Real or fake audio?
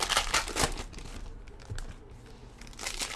real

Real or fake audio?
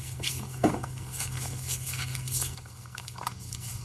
fake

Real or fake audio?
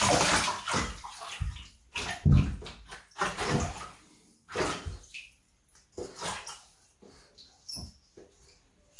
real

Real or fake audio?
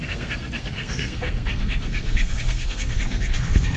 fake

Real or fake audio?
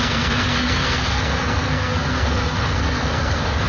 fake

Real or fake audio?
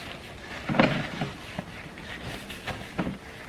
real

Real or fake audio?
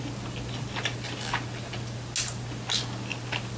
real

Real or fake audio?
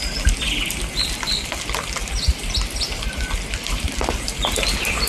real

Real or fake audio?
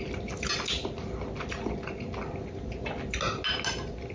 real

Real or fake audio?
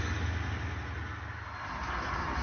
real